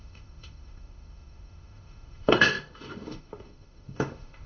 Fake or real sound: fake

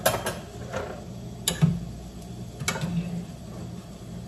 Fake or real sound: real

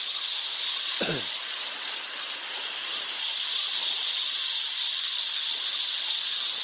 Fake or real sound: real